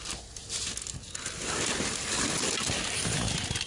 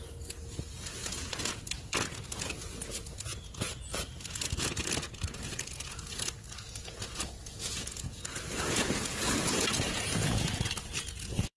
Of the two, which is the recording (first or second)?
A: first